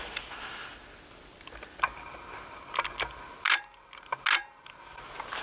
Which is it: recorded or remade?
recorded